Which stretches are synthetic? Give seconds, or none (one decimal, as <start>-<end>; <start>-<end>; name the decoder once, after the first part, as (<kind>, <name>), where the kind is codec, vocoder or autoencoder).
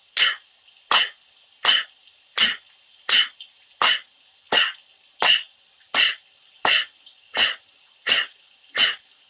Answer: none